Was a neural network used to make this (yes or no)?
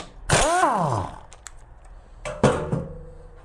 no